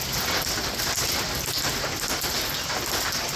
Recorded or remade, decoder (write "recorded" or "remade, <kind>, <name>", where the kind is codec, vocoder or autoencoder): recorded